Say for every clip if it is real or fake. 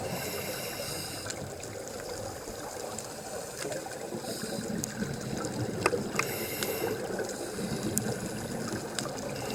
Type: real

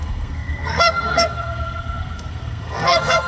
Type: fake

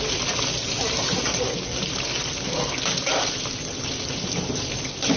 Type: real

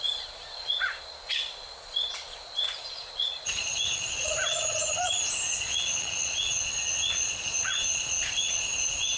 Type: fake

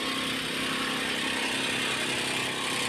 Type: real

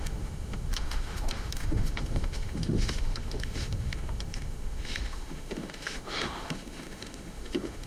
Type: fake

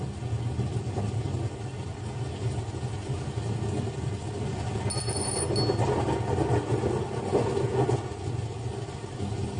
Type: real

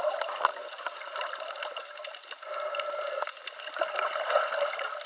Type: real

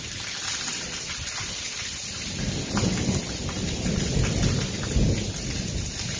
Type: real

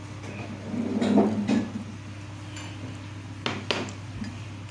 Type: real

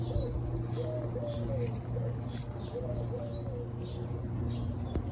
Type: real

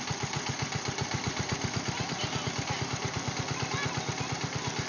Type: fake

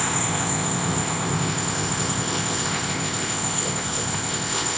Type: fake